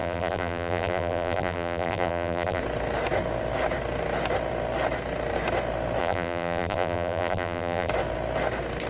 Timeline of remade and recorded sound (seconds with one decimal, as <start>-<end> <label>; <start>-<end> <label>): 0.0-2.6 remade; 2.6-6.0 recorded; 6.0-7.9 remade; 7.9-8.9 recorded